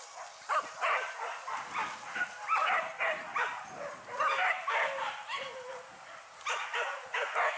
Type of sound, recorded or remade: recorded